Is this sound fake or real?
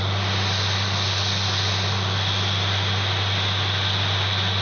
real